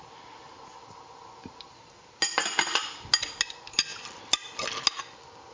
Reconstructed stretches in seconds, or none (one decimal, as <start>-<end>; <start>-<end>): none